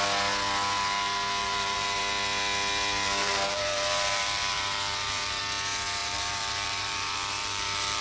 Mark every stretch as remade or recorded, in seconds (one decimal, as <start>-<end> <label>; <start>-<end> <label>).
0.0-1.4 recorded; 1.4-2.0 remade; 2.0-3.2 recorded; 3.2-5.4 remade; 5.4-6.0 recorded; 6.0-8.0 remade